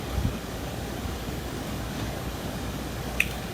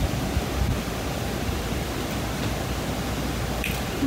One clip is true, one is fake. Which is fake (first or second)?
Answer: first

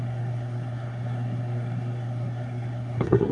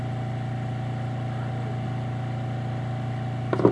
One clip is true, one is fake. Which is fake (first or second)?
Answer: first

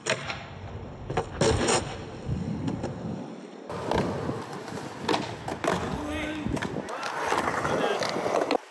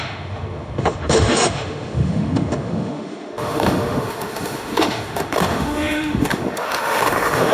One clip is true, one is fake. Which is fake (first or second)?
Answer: second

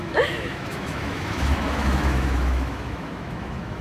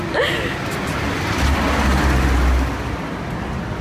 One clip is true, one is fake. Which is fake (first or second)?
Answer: first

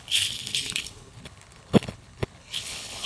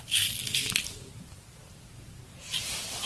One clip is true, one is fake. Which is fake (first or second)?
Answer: first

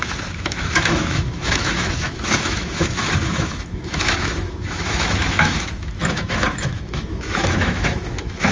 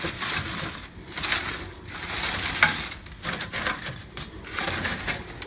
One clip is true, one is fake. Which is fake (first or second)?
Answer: first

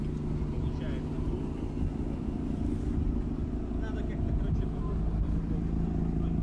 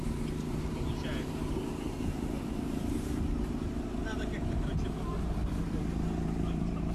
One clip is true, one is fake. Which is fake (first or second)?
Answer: second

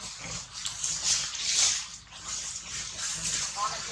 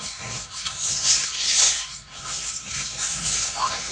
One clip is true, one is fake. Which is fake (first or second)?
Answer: second